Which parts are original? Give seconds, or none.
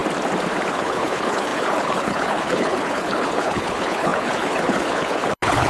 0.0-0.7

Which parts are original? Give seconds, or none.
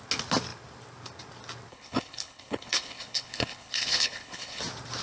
0.0-1.7; 4.6-5.0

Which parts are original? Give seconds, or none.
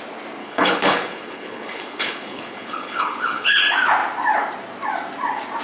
0.0-0.4; 3.6-5.6